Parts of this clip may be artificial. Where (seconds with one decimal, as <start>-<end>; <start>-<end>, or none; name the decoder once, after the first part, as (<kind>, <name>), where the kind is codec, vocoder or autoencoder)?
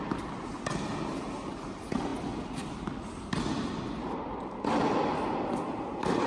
none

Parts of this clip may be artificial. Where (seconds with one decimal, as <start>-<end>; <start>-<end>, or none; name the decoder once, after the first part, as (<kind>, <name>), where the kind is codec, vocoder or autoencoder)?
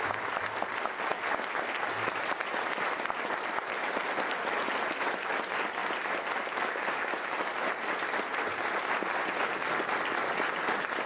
none